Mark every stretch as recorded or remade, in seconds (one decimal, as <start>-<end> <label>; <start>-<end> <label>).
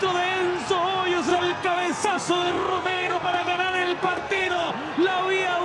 0.0-1.3 recorded; 1.3-4.7 remade; 4.7-5.6 recorded